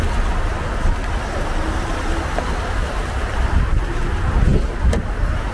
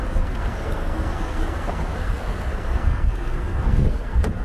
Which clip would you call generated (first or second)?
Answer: second